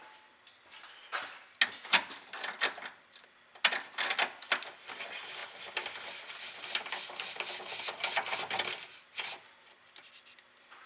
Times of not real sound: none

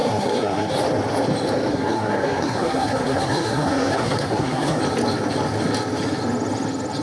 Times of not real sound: 0.0-0.7 (codec, SNAC); 1.7-4.8